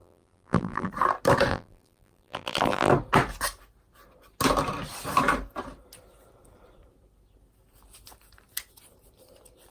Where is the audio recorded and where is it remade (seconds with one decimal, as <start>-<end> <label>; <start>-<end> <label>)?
0.0-0.9 remade; 0.9-1.5 recorded; 1.5-2.9 remade; 2.9-9.7 recorded